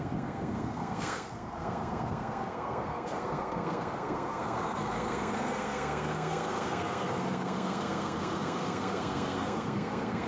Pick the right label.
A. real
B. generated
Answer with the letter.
B